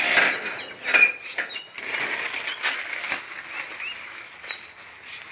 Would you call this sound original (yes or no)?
yes